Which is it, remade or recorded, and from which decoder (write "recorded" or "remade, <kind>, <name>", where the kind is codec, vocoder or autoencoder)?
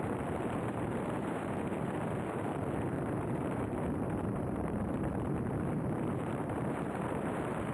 remade, vocoder, BigVGAN v2